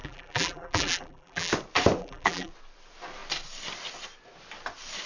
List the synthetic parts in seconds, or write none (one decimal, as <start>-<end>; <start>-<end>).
0.0-1.5; 2.0-2.5